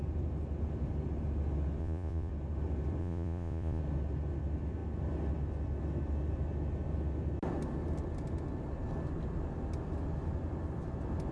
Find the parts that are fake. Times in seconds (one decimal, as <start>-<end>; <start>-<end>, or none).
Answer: 1.8-2.3; 3.0-3.8